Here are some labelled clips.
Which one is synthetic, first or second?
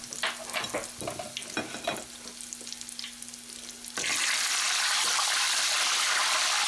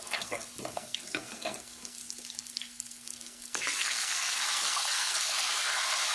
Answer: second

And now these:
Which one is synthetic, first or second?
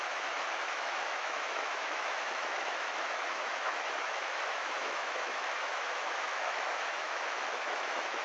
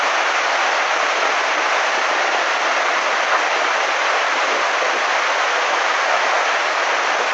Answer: first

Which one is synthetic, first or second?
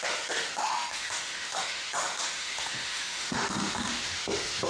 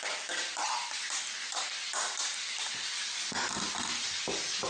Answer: first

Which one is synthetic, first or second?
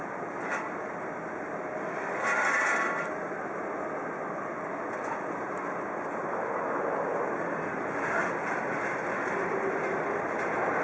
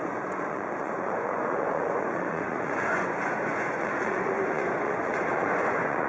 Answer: second